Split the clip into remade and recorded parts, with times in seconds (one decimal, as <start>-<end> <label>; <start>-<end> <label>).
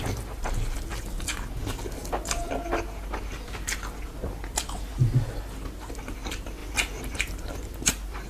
0.0-8.3 recorded